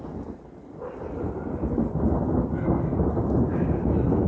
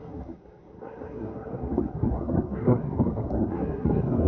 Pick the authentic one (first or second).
first